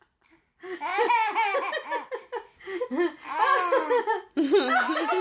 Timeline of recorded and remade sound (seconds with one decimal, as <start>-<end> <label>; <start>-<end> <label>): 0.0-0.9 remade; 0.9-4.0 recorded; 4.0-5.2 remade